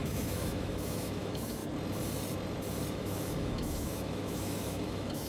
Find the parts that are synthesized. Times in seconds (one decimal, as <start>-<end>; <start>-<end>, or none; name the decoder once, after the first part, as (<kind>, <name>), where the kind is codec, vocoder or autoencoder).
0.0-1.6 (autoencoder, DAC-VAE); 2.9-5.3